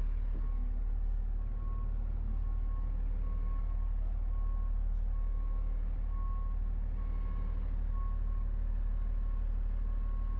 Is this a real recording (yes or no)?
yes